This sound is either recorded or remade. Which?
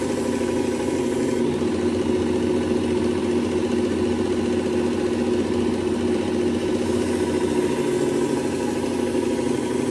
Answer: recorded